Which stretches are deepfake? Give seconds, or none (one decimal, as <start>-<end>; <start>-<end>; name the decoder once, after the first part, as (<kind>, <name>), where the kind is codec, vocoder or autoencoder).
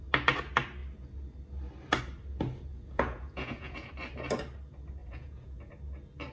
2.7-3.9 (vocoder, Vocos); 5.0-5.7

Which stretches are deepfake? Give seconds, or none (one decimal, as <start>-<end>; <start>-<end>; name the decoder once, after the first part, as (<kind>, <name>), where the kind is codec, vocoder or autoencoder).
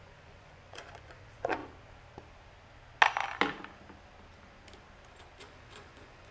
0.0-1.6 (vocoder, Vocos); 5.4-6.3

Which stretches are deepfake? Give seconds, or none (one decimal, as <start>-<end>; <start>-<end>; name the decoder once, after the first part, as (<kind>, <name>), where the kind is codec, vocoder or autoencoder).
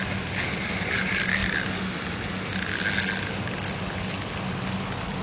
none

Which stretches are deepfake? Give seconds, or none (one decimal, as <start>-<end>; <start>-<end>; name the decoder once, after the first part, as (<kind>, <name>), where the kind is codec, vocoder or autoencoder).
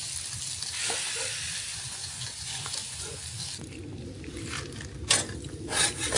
1.7-3.2 (vocoder, Vocos)